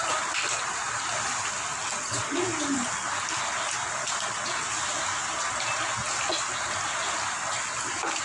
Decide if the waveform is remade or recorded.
recorded